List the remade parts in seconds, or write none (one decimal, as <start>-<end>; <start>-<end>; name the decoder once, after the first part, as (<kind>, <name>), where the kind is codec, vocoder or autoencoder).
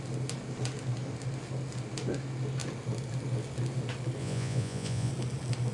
4.2-5.1 (vocoder, Vocos)